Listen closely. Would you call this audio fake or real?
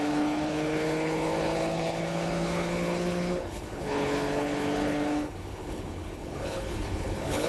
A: fake